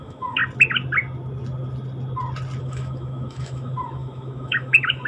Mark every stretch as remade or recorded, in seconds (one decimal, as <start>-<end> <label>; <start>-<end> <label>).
0.0-0.4 remade; 0.4-2.6 recorded; 2.6-5.1 remade